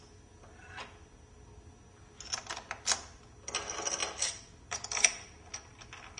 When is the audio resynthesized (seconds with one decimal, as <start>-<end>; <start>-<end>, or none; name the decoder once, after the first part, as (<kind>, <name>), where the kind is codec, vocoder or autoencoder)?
none